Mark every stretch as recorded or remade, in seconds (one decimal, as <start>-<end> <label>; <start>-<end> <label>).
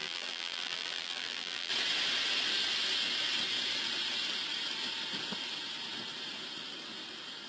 0.0-1.7 remade; 1.7-7.5 recorded